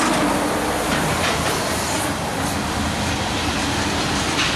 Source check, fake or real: real